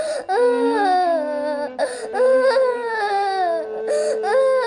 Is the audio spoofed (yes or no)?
no